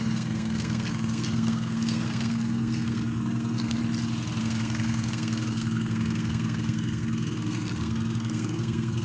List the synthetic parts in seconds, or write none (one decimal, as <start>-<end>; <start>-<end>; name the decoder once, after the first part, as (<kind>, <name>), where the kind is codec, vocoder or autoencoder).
0.0-3.8 (codec, SNAC); 4.4-9.0